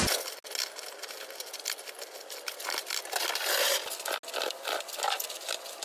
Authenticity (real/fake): real